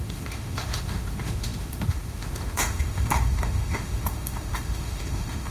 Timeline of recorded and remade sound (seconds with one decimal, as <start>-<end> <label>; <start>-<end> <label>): 0.0-5.5 remade